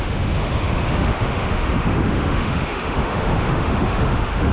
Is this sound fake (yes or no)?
yes